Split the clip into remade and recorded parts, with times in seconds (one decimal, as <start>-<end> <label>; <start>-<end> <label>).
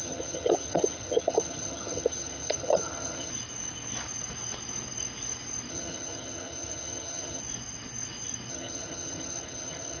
0.0-3.3 remade; 3.3-5.7 recorded; 5.7-7.4 remade; 7.4-8.5 recorded; 8.5-10.0 remade